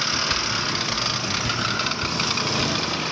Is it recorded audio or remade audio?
recorded